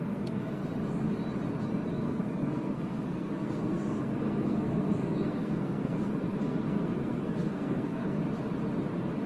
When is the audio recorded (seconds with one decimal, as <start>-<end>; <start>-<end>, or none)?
0.6-1.9; 8.2-9.3